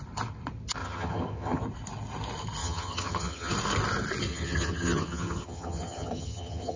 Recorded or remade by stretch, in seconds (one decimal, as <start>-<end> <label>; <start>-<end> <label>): 0.0-0.8 recorded; 0.8-1.6 remade; 1.6-2.6 recorded; 2.6-3.5 remade; 3.5-4.3 recorded; 4.3-6.8 remade